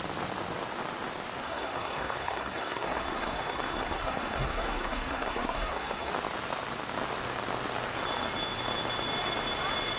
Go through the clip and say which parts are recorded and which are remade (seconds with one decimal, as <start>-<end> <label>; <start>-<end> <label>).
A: 0.0-1.4 recorded; 1.4-6.1 remade; 6.1-10.0 recorded

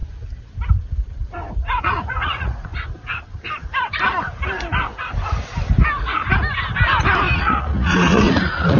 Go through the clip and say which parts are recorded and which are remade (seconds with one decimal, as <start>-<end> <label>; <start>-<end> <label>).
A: 0.0-1.8 recorded; 1.8-2.7 remade; 2.7-7.4 recorded; 7.4-8.8 remade

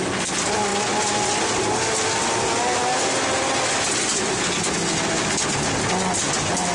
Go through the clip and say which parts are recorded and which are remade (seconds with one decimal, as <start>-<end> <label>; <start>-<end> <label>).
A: 0.0-6.7 recorded